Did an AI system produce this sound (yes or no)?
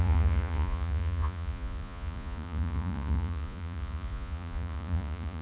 yes